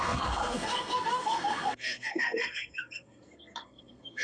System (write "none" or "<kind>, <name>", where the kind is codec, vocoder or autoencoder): codec, SNAC